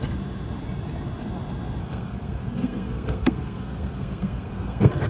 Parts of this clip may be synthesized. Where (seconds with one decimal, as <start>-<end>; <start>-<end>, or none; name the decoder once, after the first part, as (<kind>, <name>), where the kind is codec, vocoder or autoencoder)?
1.8-5.1 (codec, SNAC)